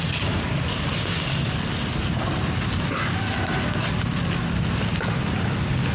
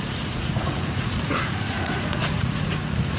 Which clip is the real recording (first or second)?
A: first